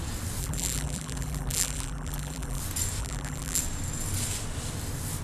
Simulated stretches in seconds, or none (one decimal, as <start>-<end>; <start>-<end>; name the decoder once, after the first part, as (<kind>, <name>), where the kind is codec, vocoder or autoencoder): 0.4-2.6 (vocoder, BigVGAN v2); 3.0-3.6